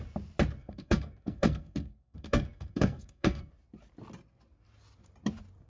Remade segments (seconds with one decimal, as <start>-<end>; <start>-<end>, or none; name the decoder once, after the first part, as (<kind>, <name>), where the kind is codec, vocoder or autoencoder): 0.6-3.5 (codec, SNAC)

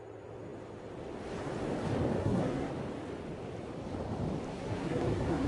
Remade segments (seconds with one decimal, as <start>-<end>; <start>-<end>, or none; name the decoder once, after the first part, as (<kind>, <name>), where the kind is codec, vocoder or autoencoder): 2.2-2.7 (codec, SNAC); 4.5-5.5

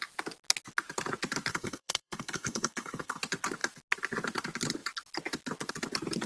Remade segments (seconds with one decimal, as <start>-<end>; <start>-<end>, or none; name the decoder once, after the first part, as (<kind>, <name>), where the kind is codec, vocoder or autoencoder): 1.5-3.2 (codec, SNAC)

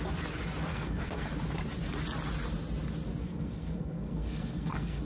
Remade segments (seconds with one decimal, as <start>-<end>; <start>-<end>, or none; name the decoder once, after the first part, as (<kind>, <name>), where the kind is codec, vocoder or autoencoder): 0.7-1.3 (codec, SNAC); 3.2-5.0

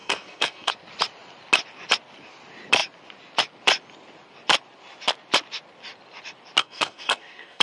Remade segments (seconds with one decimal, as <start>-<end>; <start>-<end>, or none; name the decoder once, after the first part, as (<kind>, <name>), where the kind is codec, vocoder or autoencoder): 0.0-0.7 (codec, SNAC); 6.6-7.6

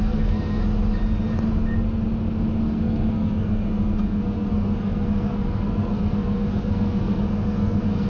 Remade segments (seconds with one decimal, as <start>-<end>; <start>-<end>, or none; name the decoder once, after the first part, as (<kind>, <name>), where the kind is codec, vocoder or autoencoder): 0.0-0.6 (codec, SNAC); 2.6-8.1

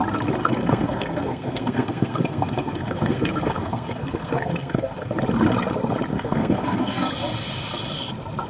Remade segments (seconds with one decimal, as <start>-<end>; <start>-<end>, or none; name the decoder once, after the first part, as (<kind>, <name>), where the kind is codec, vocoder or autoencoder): 0.4-5.2 (codec, SNAC); 6.1-7.1